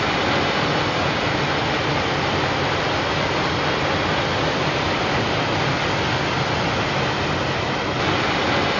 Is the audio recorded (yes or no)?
yes